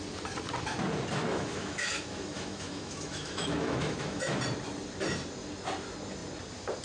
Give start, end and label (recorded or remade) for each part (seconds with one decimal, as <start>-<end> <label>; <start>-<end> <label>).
0.0-1.2 recorded; 1.2-4.2 remade; 4.2-6.8 recorded

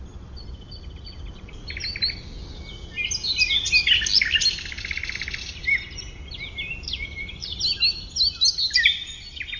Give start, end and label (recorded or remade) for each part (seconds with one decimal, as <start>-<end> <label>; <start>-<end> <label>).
0.0-9.6 recorded

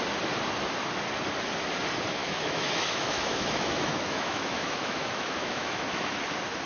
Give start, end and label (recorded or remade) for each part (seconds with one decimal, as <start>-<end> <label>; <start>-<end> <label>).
0.0-2.2 recorded; 2.2-6.2 remade; 6.2-6.7 recorded